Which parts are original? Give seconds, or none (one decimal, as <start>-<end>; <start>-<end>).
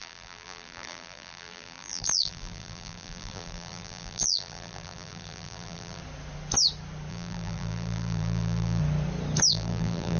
6.0-7.1; 8.8-9.5